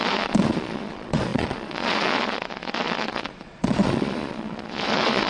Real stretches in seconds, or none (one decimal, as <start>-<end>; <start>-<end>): none